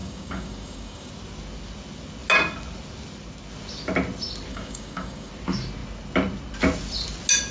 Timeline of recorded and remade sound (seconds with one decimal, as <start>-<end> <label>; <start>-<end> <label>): 0.0-1.1 remade; 1.1-4.5 recorded; 4.5-5.3 remade; 5.3-7.5 recorded